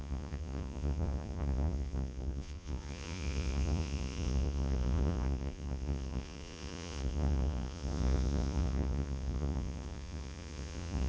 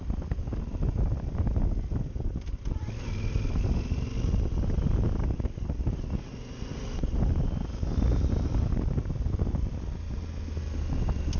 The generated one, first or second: first